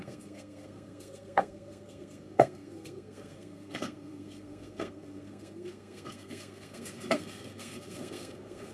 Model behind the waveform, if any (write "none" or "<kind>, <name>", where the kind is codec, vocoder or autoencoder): codec, SNAC